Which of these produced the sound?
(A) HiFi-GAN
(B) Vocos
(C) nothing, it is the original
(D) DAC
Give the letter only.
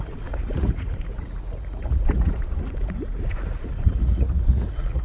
B